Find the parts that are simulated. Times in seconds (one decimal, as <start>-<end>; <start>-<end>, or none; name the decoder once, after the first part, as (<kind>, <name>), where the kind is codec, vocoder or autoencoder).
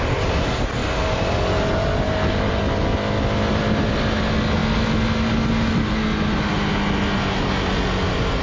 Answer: none